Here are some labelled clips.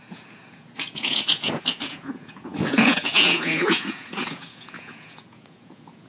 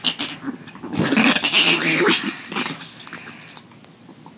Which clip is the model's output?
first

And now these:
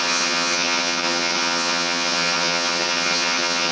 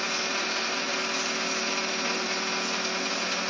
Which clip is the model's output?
first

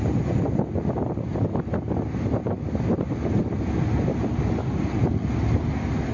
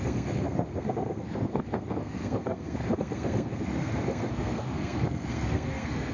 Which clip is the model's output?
second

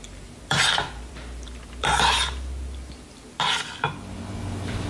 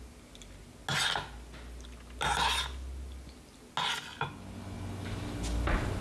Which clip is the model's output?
first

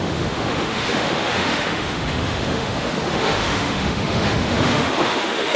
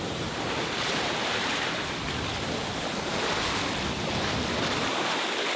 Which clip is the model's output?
first